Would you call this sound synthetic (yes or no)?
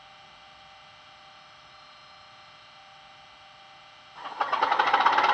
no